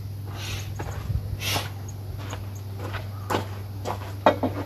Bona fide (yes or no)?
yes